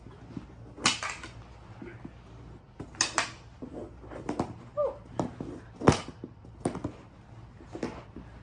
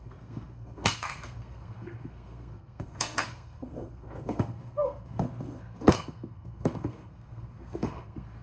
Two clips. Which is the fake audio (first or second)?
second